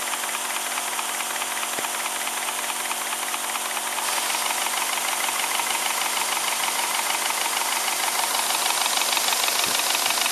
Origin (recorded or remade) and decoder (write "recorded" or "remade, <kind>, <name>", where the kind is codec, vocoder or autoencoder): recorded